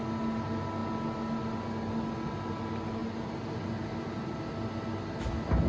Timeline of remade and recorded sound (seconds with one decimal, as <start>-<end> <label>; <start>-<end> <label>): 0.0-5.7 recorded